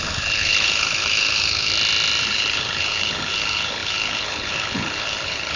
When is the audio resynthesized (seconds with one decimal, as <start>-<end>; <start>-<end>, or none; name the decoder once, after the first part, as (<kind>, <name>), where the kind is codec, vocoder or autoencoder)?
0.0-1.7 (codec, HILCodec); 2.2-5.6